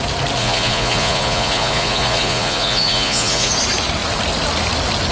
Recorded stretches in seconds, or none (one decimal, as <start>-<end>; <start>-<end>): 0.0-0.4; 3.5-5.1